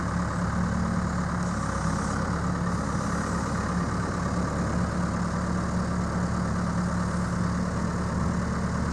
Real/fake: real